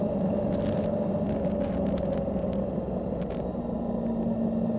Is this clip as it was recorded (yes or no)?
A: yes